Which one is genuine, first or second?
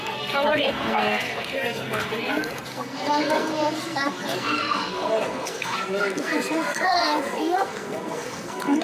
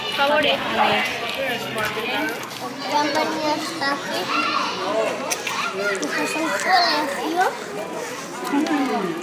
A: second